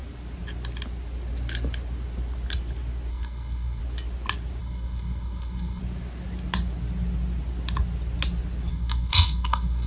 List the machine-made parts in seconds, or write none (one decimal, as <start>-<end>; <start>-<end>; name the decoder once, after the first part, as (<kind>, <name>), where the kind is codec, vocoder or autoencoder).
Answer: 3.1-3.8 (codec, SNAC); 4.6-5.8; 8.7-9.9

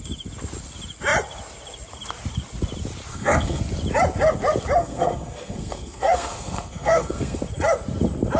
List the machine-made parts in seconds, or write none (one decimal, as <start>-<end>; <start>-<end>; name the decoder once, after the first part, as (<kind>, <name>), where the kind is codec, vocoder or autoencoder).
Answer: 3.1-3.6 (codec, SNAC); 4.8-7.4

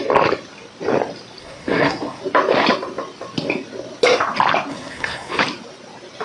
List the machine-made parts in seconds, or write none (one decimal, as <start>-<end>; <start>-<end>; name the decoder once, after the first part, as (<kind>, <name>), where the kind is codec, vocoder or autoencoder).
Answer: 1.4-2.2 (codec, SNAC); 4.7-5.4

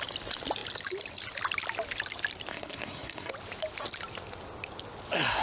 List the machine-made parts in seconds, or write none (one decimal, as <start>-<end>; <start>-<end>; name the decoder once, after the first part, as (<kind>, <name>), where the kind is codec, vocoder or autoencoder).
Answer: 2.5-3.3 (codec, SNAC)

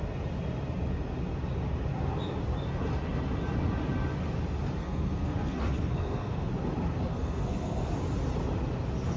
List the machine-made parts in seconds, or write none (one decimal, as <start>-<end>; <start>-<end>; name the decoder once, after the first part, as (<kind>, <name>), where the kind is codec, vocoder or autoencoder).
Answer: 4.8-6.5 (codec, SNAC); 7.1-7.9

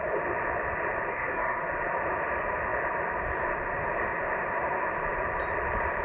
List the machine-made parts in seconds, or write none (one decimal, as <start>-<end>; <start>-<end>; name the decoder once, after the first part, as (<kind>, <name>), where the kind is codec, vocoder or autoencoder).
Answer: 1.1-1.6 (codec, SNAC)

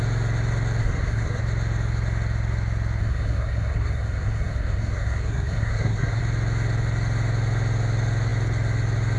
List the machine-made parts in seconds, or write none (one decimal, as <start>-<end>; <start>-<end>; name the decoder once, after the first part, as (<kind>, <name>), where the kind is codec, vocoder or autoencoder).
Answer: 0.8-1.4 (codec, SNAC); 3.0-6.2